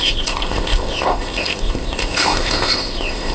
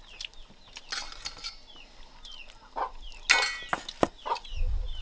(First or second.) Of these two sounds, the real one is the second